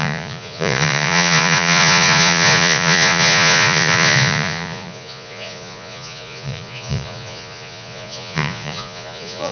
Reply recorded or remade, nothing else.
remade